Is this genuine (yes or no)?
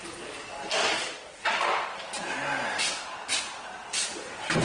no